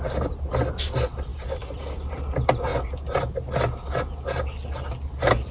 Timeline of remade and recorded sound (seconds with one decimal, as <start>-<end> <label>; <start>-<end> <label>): 0.0-5.5 recorded